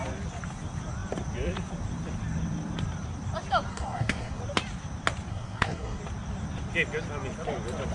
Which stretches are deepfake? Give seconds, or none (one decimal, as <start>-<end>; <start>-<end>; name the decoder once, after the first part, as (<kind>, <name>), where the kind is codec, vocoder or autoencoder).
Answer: 3.7-4.4 (codec, SNAC); 5.3-6.0